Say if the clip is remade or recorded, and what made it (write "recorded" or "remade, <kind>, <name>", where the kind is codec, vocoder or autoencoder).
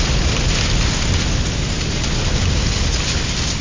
recorded